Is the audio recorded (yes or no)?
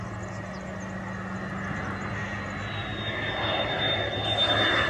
yes